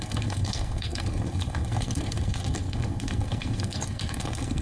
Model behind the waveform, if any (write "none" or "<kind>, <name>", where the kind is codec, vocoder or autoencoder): codec, SNAC